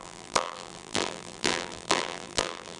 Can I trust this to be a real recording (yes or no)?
no